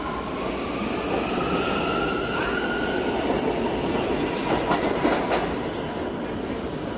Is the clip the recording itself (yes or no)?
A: yes